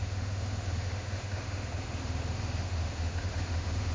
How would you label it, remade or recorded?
remade